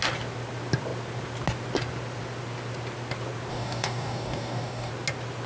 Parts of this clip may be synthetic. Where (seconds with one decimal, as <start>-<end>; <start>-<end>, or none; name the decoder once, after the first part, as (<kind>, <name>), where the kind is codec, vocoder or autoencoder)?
3.5-4.9 (codec, DAC)